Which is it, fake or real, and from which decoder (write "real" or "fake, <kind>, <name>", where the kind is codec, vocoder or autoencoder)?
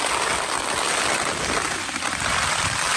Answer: real